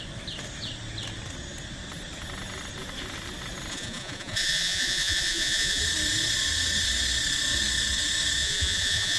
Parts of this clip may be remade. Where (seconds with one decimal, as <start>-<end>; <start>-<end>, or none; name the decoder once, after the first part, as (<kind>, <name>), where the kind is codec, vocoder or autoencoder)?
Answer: 3.7-5.8 (vocoder, Vocos); 8.4-9.2